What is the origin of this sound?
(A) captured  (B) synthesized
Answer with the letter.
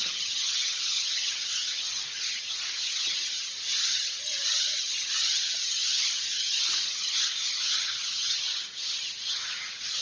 B